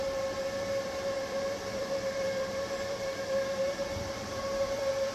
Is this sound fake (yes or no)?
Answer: yes